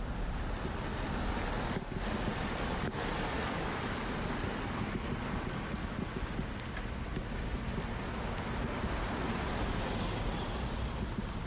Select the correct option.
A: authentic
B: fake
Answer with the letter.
A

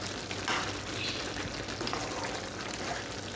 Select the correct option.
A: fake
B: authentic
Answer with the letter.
B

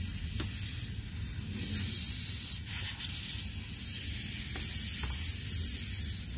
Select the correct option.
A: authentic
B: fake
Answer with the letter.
A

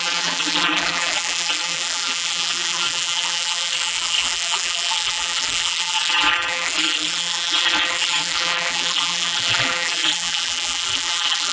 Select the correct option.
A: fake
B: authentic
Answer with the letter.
A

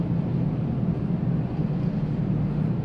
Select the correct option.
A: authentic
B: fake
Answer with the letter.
A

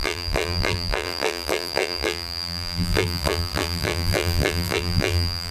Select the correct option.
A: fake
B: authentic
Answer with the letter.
A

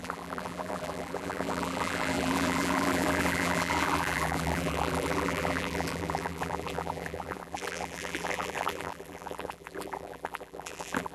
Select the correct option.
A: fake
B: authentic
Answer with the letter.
A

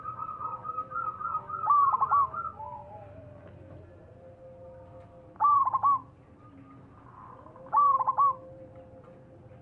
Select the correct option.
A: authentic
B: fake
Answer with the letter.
A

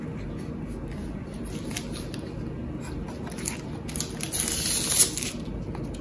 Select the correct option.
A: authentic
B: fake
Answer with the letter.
A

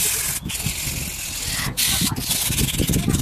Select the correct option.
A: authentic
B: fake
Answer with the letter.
A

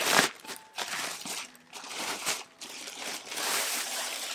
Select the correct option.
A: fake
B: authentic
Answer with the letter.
A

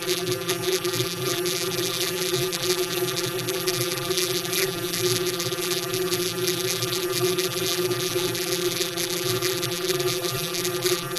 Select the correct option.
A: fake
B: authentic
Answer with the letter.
A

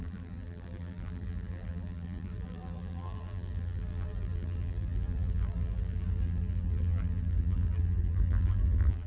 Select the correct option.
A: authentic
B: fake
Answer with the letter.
B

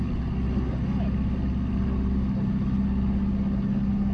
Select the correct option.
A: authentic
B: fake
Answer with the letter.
A